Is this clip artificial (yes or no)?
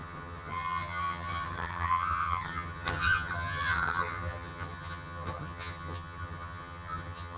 yes